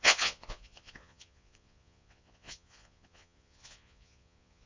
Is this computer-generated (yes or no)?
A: yes